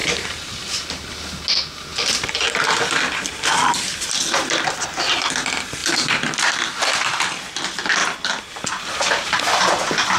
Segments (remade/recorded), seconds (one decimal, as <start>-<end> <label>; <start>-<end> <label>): 0.0-0.9 remade; 0.9-5.8 recorded; 5.8-7.3 remade; 7.3-10.2 recorded